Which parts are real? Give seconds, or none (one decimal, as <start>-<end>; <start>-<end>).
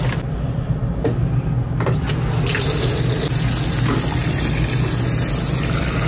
0.0-6.1